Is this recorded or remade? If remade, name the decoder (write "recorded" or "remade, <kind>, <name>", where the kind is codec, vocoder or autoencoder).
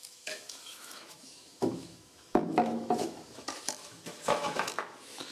remade, autoencoder, DAC-VAE